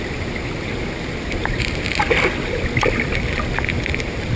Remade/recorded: recorded